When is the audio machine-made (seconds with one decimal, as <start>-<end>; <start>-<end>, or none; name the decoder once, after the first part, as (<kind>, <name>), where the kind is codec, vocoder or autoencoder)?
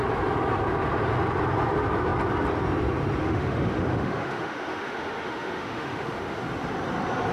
3.2-6.4 (autoencoder, DAC-VAE)